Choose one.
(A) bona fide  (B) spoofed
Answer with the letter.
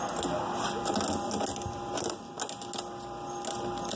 A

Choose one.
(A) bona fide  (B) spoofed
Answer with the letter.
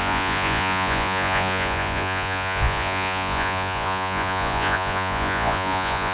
B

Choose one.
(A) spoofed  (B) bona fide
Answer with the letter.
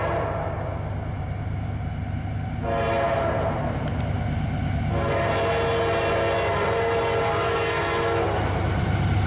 B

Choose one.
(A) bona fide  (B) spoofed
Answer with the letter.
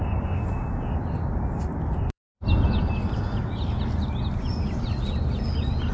A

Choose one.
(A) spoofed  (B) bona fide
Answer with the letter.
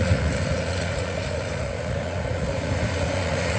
A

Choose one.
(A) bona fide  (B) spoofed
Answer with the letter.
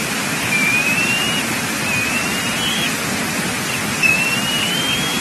A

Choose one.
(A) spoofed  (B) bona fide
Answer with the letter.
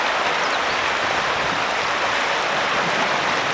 B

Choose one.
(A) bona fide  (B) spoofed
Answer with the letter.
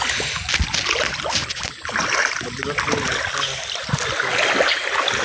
A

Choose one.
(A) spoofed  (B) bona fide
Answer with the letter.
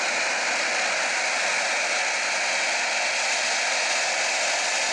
B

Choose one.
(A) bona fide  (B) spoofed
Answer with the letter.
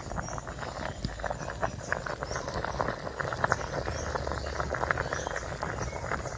A